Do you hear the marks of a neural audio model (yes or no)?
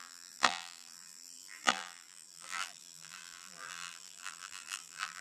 yes